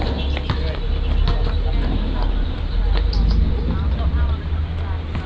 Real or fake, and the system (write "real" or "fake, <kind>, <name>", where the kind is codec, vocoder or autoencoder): real